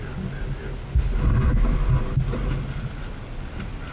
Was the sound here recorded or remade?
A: recorded